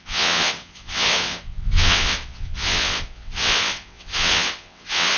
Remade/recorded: remade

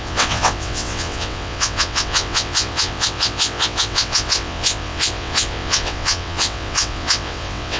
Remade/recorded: remade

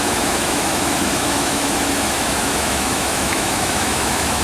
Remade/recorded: remade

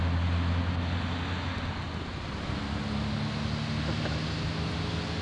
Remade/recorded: recorded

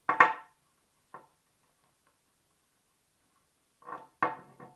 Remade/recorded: recorded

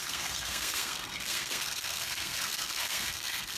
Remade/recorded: remade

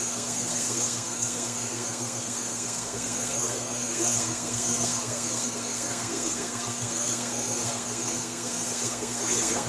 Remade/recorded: remade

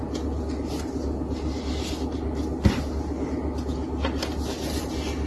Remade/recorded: recorded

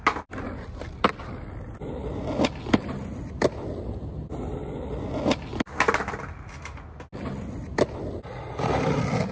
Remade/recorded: recorded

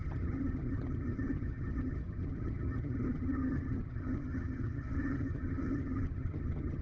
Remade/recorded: remade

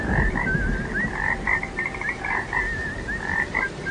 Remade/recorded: recorded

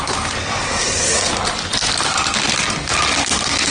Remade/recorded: recorded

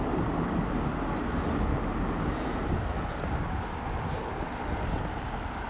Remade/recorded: recorded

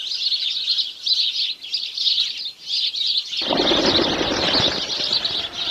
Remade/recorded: recorded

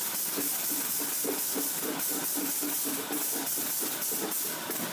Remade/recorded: remade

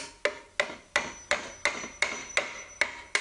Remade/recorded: recorded